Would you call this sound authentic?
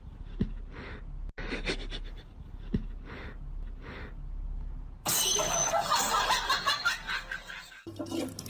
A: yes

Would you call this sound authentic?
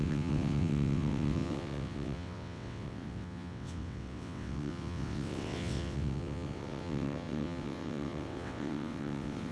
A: no